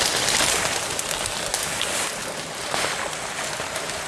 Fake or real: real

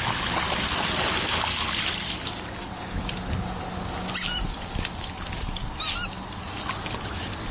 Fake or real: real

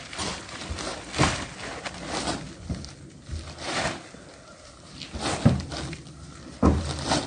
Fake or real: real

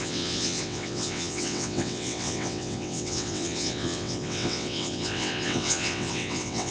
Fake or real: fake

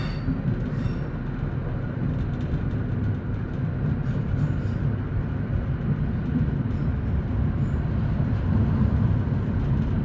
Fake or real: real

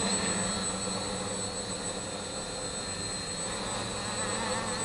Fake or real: real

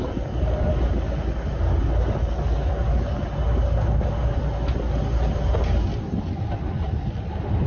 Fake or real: real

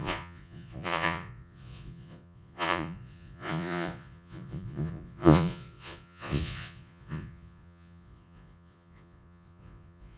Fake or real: fake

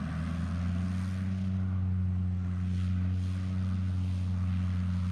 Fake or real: real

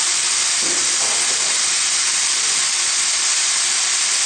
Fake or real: real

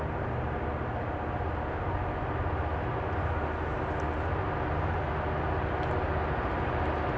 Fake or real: real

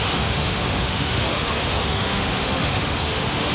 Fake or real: fake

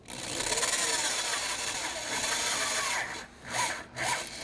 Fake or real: real